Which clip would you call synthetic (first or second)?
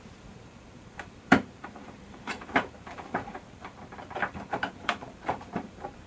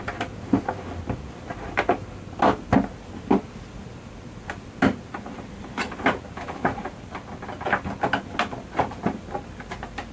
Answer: first